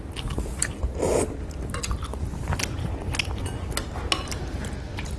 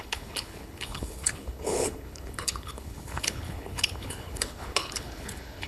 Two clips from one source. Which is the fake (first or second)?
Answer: second